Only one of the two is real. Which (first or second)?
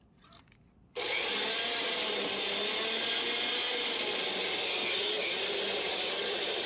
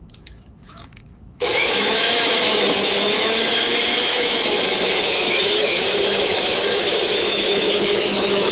first